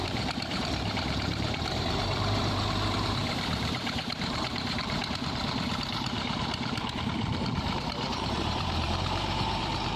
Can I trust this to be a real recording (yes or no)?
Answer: no